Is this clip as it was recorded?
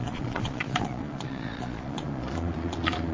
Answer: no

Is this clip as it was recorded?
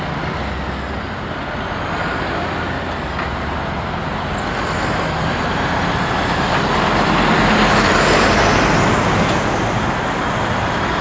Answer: yes